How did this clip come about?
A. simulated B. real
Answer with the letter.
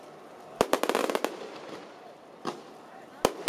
B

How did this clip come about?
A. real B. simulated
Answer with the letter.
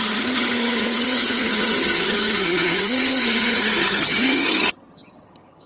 B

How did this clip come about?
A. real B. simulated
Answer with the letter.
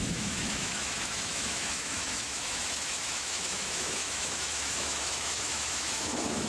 B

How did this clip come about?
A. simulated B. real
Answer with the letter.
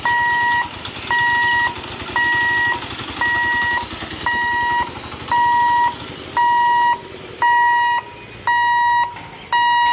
B